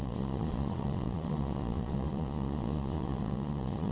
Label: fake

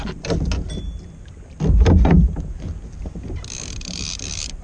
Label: real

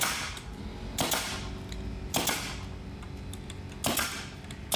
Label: real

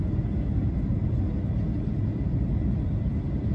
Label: real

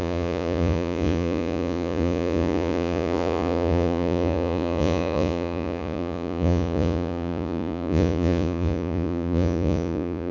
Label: fake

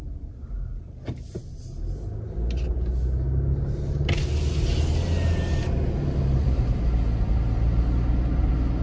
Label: real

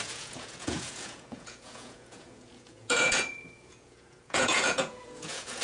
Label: fake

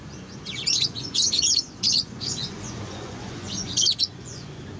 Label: fake